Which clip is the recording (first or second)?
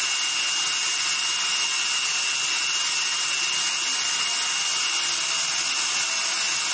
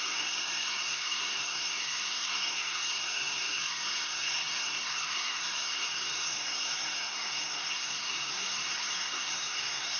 first